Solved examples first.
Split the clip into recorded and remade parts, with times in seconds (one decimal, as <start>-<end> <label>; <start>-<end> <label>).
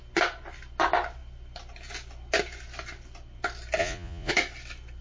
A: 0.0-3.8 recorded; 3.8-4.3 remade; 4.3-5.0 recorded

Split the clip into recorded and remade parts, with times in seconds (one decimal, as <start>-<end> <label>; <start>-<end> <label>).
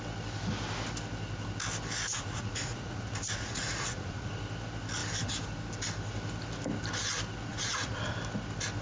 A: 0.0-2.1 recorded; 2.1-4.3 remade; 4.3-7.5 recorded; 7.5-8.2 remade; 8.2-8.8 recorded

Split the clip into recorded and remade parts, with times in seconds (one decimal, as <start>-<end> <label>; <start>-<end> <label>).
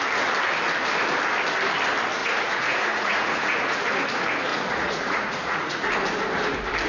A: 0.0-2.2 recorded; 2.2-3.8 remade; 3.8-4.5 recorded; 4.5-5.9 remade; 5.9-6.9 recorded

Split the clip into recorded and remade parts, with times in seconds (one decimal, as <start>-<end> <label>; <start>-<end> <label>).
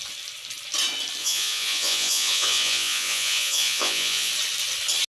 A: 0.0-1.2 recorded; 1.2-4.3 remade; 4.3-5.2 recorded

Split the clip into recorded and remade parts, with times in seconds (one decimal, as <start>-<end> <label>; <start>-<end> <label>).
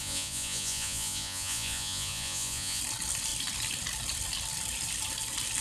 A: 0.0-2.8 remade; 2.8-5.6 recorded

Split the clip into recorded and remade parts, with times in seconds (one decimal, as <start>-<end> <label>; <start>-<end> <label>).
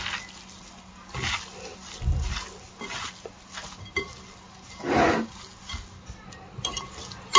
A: 0.0-7.4 recorded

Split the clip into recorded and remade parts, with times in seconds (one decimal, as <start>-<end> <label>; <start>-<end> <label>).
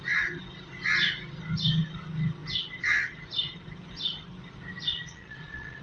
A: 0.0-4.9 recorded; 4.9-5.8 remade